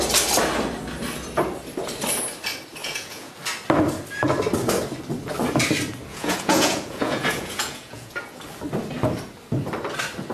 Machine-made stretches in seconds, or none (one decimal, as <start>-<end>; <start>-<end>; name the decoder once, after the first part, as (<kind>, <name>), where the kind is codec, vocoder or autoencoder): 2.8-3.3 (vocoder, Vocos); 6.1-8.4